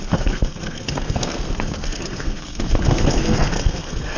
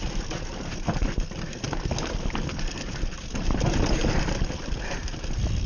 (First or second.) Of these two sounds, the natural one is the second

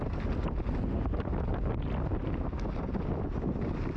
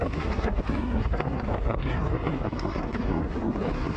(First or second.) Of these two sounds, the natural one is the first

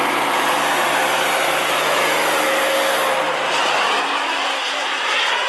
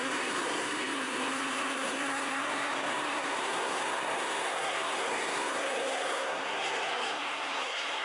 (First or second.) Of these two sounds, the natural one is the first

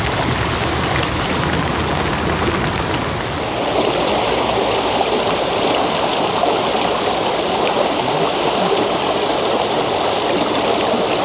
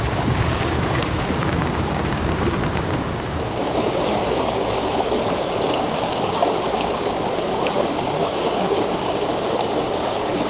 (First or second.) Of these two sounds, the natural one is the first